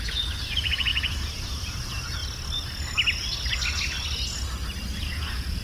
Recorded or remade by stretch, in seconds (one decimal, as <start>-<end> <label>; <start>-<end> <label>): 0.0-2.2 remade; 2.2-5.0 recorded; 5.0-5.6 remade